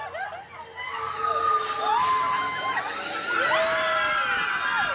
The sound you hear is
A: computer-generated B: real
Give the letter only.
B